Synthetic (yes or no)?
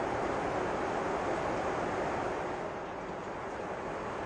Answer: no